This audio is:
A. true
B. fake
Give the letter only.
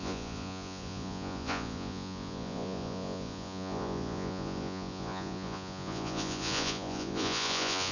B